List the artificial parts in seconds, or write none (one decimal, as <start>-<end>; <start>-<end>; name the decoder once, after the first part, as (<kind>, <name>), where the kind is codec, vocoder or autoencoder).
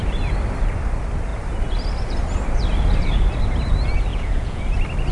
4.1-4.6 (vocoder, Vocos)